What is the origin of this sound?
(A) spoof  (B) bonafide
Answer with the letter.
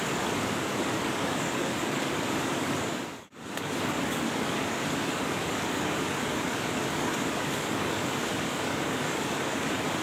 A